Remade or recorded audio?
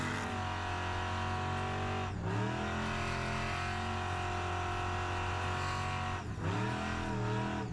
recorded